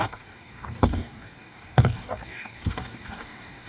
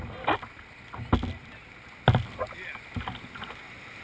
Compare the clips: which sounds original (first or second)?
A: second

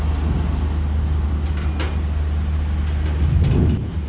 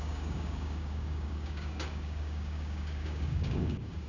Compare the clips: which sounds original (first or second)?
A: first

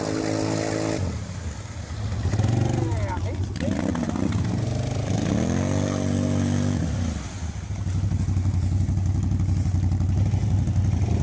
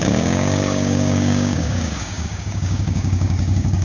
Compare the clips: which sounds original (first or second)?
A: first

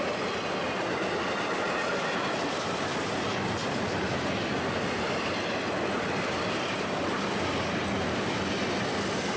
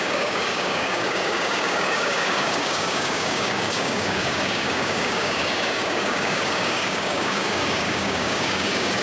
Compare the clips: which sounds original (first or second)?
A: first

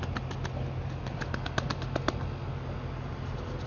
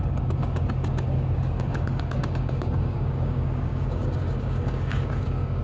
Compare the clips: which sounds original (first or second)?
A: first